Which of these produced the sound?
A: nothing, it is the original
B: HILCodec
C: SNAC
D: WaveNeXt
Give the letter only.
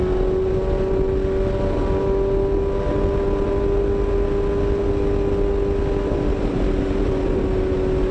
A